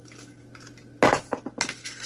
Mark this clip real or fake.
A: real